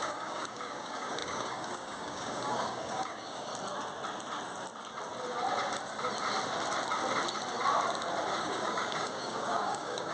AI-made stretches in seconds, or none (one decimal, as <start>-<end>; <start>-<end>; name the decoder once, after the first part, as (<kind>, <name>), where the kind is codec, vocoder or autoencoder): 0.0-3.5 (codec, DAC); 8.4-10.1